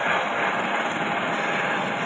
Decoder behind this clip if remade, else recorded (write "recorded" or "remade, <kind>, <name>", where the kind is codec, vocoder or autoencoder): recorded